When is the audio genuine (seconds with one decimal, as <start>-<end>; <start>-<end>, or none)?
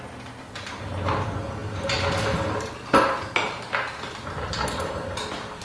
0.0-5.6